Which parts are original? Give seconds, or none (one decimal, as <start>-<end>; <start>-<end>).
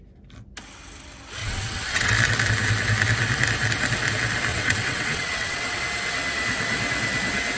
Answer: 0.0-1.4; 2.1-4.5; 5.8-7.6